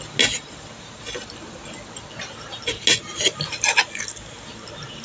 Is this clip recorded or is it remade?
recorded